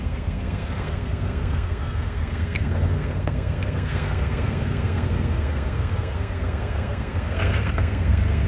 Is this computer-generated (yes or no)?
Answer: yes